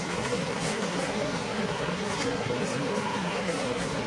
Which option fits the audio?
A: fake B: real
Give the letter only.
A